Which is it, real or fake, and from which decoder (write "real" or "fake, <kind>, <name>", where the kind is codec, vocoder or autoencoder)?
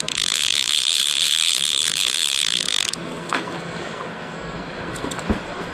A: fake, codec, SNAC